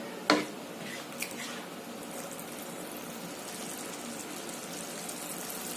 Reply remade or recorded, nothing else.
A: recorded